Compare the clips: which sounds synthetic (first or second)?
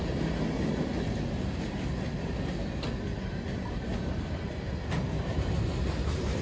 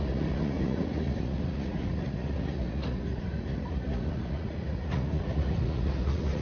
second